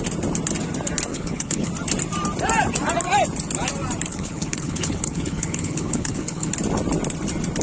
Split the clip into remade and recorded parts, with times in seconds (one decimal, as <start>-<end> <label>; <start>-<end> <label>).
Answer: 0.0-1.1 recorded; 1.1-1.7 remade; 1.7-4.1 recorded; 4.1-6.5 remade; 6.5-7.6 recorded